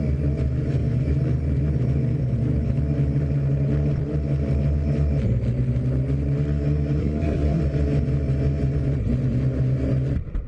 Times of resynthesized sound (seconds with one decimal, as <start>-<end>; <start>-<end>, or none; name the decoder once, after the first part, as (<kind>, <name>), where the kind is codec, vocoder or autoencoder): 7.0-7.6 (codec, SNAC)